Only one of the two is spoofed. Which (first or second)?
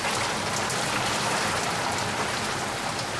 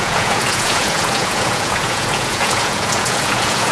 second